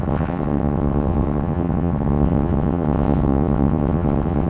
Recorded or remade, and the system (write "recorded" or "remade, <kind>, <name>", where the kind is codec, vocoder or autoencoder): remade, vocoder, WaveNeXt